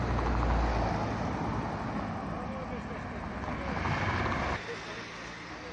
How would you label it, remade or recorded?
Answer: recorded